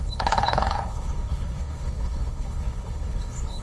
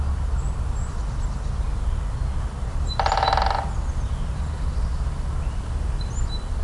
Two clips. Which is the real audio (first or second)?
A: second